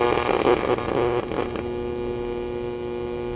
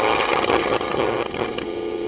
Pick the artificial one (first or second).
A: second